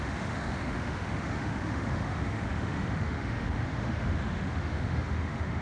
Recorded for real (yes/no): no